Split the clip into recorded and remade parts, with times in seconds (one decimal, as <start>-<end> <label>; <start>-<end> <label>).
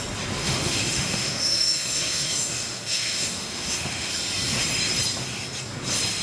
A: 0.0-0.4 recorded; 0.4-4.1 remade; 4.1-6.2 recorded